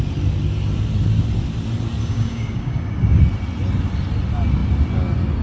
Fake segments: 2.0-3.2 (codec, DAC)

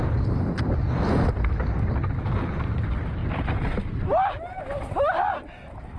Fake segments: none

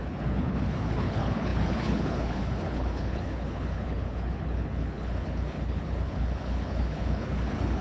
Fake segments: 0.0-7.8 (codec, HILCodec)

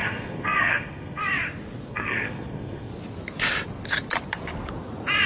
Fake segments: 0.0-1.2 (codec, SNAC); 1.9-2.9

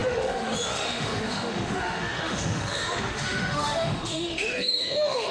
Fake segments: 0.0-5.3 (autoencoder, DAC-VAE)

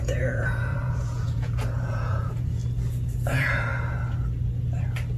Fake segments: 0.0-2.6 (vocoder, Vocos); 3.3-3.7